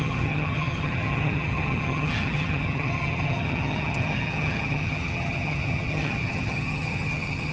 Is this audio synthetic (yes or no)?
yes